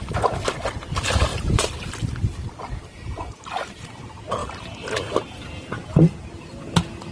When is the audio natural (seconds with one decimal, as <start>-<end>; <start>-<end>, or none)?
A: 0.0-1.3; 2.1-2.7; 3.8-7.1